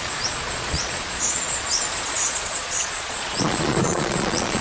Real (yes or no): no